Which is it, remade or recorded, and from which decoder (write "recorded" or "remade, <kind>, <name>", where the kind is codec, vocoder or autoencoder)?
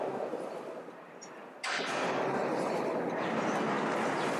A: recorded